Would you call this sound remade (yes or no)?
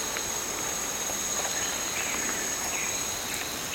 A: no